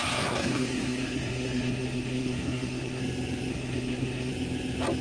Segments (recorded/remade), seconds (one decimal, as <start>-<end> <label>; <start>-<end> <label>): 0.0-3.0 remade; 3.0-3.5 recorded; 3.5-4.3 remade; 4.3-5.0 recorded